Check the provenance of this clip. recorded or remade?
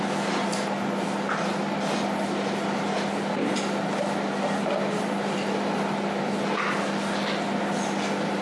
recorded